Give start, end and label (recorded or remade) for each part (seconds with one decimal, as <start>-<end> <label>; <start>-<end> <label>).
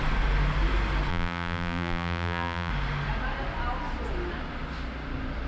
0.0-1.1 recorded; 1.1-2.7 remade; 2.7-5.5 recorded